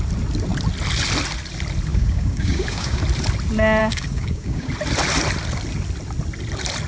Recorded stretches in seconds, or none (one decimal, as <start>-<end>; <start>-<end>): 0.0-1.9; 3.0-3.8; 4.7-6.9